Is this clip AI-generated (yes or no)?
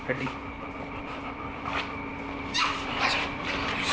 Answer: yes